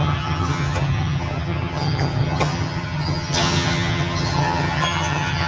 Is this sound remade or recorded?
remade